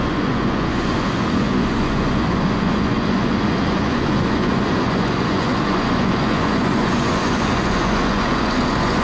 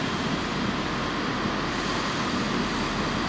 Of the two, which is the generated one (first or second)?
first